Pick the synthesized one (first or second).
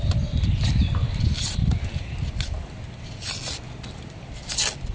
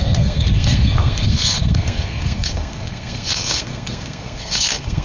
second